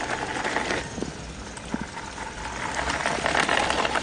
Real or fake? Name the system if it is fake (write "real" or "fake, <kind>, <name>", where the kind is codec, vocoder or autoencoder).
real